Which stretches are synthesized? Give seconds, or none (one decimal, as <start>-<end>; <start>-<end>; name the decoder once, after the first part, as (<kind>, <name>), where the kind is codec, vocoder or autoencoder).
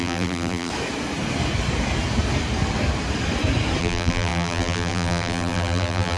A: 0.0-0.7 (vocoder, BigVGAN v2); 3.8-6.2